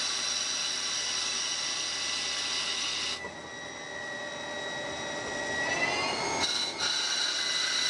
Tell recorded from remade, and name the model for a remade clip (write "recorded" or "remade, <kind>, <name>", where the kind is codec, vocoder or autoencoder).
recorded